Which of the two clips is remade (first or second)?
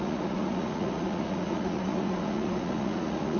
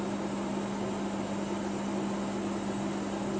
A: first